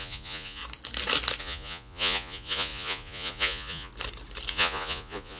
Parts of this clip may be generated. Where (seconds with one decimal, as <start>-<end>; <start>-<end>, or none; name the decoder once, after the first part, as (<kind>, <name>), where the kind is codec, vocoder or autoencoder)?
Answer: 0.0-0.6 (vocoder, Vocos); 1.4-3.9; 4.5-5.4